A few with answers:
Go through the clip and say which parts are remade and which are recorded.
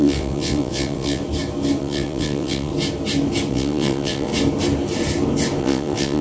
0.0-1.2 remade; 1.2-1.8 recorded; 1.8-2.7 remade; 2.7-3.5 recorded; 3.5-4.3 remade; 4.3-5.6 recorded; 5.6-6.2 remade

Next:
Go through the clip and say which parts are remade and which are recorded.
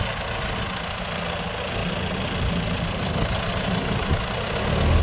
0.0-5.0 recorded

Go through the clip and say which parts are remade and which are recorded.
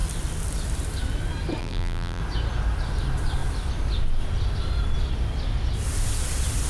0.0-1.6 recorded; 1.6-2.2 remade; 2.2-6.7 recorded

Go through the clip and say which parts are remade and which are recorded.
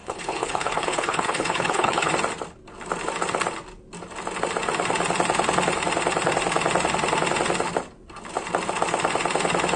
0.0-2.1 remade; 2.1-9.8 recorded